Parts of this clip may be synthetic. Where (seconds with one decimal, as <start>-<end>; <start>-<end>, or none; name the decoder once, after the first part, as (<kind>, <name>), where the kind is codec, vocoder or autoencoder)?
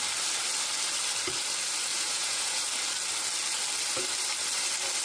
1.9-2.6 (vocoder, Vocos)